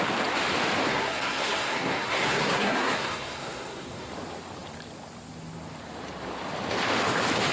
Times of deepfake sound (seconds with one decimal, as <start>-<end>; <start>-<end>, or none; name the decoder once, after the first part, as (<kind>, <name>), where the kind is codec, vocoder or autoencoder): 0.9-4.1 (codec, SNAC)